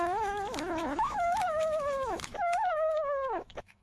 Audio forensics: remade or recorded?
remade